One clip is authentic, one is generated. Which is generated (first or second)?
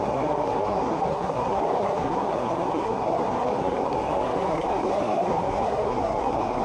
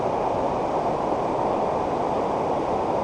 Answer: first